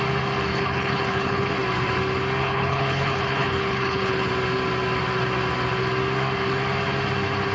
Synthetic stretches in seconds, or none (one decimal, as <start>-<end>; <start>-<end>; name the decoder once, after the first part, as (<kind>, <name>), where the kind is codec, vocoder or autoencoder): 0.5-1.5 (codec, HILCodec); 2.4-4.3